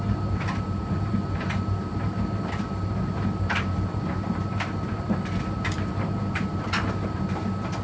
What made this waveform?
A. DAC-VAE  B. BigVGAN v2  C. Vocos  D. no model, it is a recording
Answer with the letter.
B